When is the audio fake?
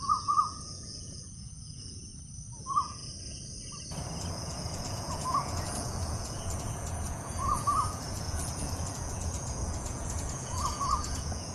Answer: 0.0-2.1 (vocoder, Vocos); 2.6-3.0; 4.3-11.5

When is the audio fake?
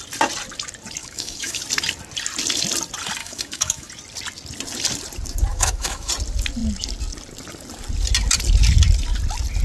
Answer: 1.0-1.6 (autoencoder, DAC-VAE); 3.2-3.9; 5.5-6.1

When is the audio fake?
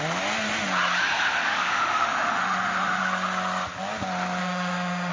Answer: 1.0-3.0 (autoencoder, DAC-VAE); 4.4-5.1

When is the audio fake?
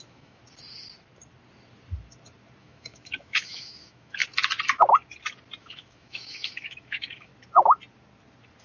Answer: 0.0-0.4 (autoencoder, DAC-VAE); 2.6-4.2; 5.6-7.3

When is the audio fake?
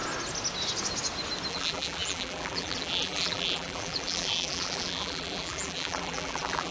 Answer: 1.5-6.7 (vocoder, BigVGAN v2)